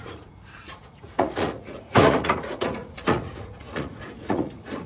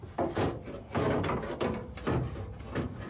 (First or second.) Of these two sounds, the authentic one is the second